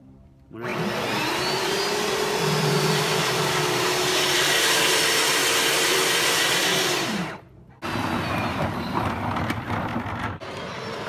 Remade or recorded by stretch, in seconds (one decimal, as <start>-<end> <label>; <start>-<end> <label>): 0.0-0.7 remade; 0.7-1.6 recorded; 1.6-5.4 remade; 5.4-5.9 recorded; 5.9-7.2 remade; 7.2-8.8 recorded; 8.8-9.9 remade; 9.9-10.7 recorded; 10.7-11.1 remade